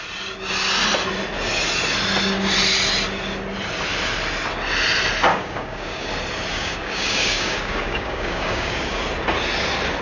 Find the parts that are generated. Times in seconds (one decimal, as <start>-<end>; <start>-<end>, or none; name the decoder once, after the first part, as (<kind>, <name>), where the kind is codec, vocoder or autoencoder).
5.3-6.1 (codec, DAC); 6.5-9.0